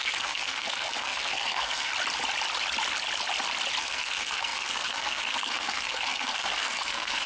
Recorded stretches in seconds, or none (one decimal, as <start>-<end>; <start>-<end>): 1.9-3.8

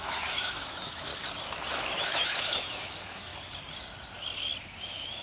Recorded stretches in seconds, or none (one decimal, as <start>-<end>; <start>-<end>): 1.1-2.0; 3.3-4.6

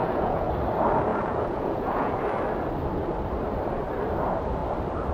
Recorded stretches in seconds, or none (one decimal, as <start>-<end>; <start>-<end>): 0.5-1.1; 2.2-5.1

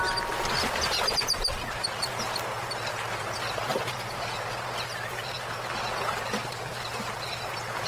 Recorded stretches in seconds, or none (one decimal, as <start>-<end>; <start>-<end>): 0.0-7.9

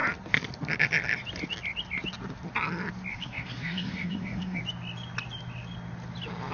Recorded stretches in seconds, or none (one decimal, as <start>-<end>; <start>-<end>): 0.0-3.1; 4.6-6.5

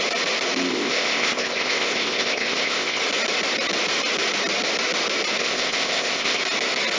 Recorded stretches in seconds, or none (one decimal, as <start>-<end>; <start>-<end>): 0.0-0.7; 3.0-5.4; 6.4-7.0